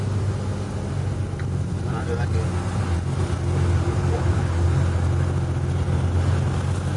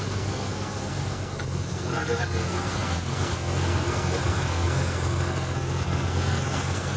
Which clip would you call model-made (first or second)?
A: second